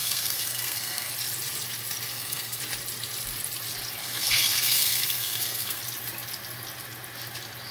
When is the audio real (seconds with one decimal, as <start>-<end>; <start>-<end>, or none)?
1.1-2.1; 2.6-4.0; 5.8-7.7

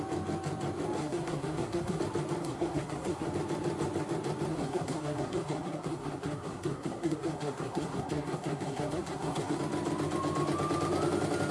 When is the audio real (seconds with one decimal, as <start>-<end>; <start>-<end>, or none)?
0.0-1.0; 2.0-2.4; 3.3-4.5; 9.6-11.5

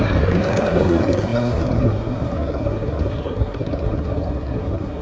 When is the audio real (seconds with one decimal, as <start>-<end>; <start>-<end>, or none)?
none

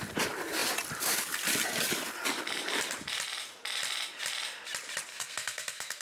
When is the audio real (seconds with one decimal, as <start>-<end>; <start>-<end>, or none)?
0.0-5.1

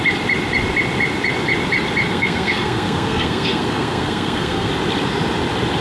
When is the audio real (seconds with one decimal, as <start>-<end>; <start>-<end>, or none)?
0.0-2.1; 4.7-5.8